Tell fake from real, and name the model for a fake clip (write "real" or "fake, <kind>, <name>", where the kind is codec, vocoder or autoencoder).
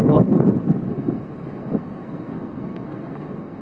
fake, codec, SNAC